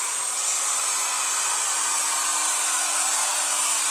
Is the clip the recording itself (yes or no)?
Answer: yes